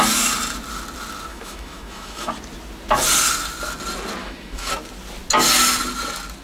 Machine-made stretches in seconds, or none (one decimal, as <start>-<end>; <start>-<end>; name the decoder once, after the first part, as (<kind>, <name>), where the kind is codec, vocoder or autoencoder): 1.3-2.3 (autoencoder, DAC-VAE); 4.2-4.7